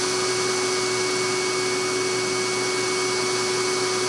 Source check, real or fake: real